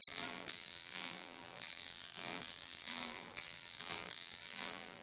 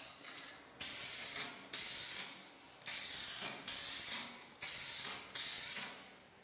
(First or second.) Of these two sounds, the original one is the second